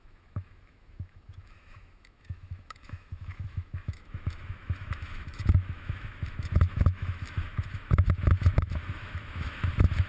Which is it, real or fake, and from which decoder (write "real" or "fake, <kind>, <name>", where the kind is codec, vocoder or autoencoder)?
fake, autoencoder, DAC-VAE